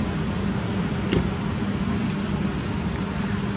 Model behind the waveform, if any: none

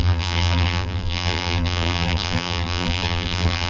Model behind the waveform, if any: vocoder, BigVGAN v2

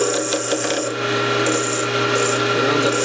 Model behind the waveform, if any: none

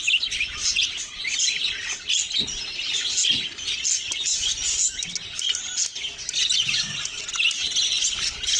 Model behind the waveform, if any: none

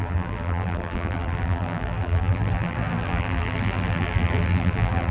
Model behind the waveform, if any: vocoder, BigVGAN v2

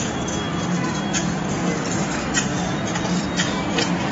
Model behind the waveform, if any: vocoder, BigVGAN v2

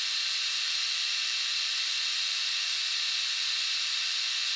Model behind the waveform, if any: vocoder, BigVGAN v2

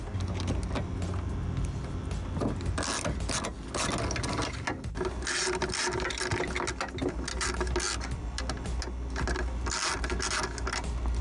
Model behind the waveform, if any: none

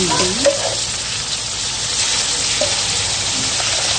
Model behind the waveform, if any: none